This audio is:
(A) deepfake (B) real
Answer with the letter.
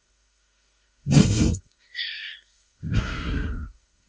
A